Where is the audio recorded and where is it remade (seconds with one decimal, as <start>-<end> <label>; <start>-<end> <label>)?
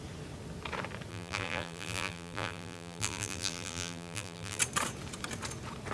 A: 0.0-1.1 recorded; 1.1-4.6 remade; 4.6-5.9 recorded